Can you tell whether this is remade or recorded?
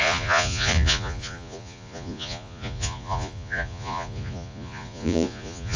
remade